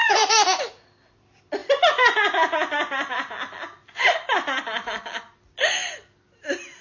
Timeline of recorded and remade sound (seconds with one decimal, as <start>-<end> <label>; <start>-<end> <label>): 0.0-0.6 remade; 0.6-6.8 recorded